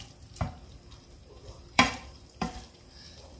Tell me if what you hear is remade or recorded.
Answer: remade